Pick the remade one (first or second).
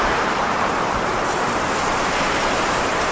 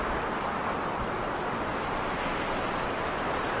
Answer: first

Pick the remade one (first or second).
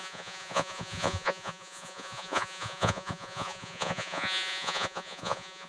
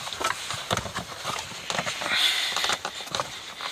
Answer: first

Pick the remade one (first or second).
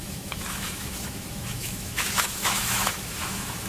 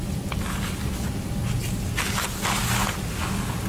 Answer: first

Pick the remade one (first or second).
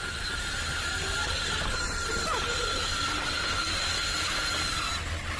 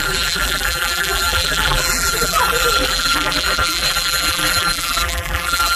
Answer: second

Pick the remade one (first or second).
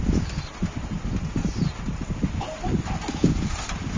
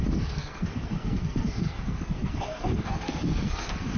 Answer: second